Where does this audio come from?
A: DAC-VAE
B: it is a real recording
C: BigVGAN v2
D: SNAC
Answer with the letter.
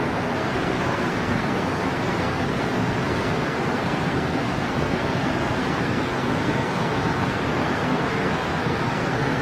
D